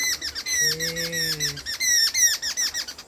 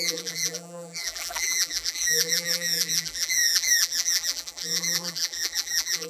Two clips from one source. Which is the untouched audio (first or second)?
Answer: first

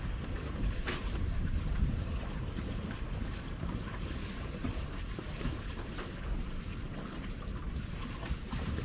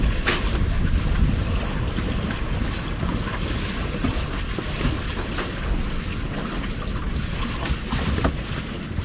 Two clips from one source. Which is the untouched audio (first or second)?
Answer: second